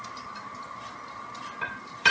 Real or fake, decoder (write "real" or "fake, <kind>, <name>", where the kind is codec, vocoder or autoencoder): real